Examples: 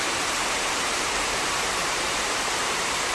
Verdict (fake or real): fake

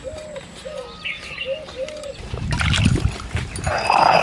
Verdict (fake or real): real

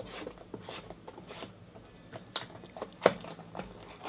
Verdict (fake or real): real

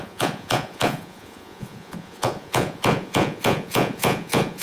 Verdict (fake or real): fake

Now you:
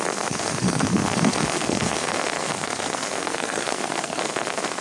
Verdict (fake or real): fake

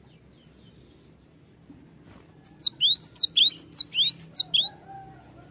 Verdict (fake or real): real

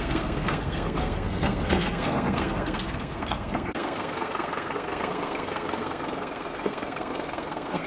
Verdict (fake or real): fake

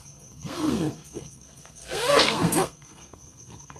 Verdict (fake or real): fake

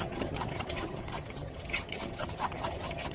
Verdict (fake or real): fake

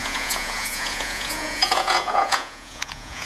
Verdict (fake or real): fake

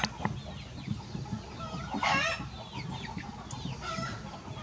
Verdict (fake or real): real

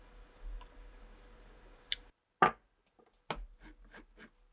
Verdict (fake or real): real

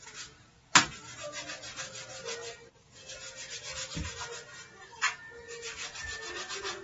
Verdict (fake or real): real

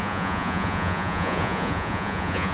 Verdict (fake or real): fake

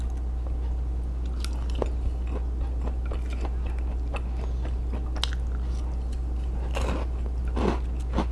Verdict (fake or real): real